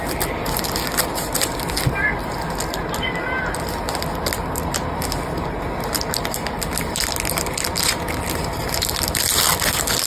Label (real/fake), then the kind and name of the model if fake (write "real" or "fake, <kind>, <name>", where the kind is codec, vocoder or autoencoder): real